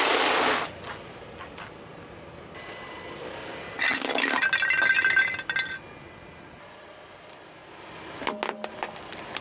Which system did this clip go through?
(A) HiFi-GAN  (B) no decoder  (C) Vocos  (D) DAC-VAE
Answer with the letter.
B